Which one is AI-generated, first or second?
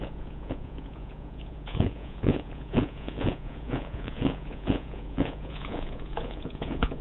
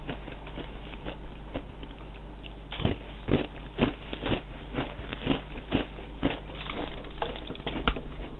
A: first